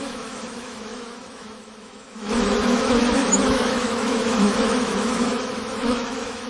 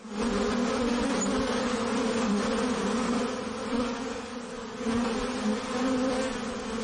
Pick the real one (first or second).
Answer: second